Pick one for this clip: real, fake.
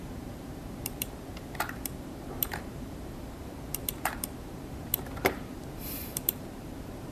fake